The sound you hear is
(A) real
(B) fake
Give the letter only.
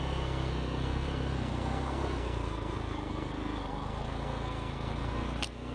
B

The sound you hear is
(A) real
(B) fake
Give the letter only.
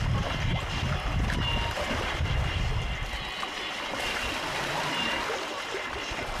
A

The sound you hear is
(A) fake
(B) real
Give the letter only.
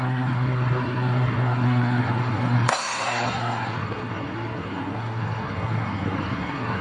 A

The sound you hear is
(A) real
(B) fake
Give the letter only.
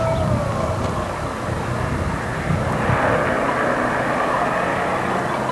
A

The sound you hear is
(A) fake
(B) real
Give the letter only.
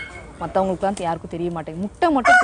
B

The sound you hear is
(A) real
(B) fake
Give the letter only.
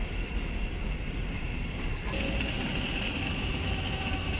A